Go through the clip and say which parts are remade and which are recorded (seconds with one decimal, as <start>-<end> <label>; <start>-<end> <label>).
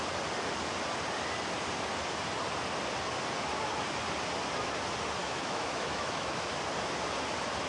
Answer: 0.0-5.2 recorded; 5.2-6.5 remade; 6.5-7.7 recorded